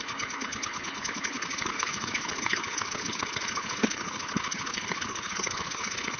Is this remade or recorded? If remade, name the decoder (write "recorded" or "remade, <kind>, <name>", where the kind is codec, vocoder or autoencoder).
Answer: remade, codec, HILCodec